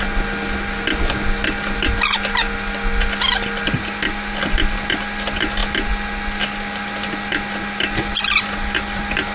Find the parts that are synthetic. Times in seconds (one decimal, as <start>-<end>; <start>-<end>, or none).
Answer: none

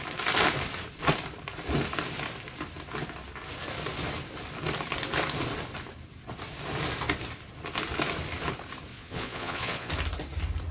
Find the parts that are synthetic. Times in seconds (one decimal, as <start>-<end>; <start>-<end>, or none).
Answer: 8.9-9.9